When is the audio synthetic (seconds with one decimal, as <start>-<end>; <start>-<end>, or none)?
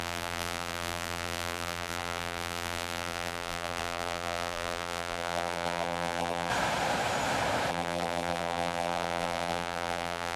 0.0-6.5; 7.7-10.4